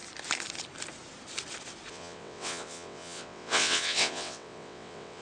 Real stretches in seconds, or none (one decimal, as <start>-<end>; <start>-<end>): 0.0-1.9